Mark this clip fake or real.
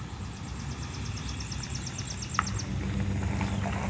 real